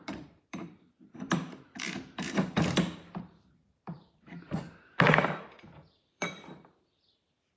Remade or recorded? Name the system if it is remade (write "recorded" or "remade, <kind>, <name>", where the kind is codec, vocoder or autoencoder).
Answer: remade, vocoder, BigVGAN v2